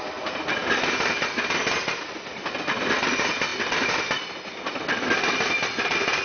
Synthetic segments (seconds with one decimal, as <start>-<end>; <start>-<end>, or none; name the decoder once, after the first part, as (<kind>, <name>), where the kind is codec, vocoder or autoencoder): 3.5-4.2 (vocoder, BigVGAN v2)